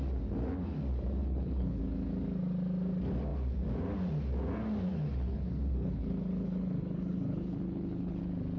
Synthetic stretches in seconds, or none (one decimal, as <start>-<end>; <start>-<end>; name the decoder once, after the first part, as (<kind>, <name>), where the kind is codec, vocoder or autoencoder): 1.2-1.8 (codec, HILCodec); 4.9-8.2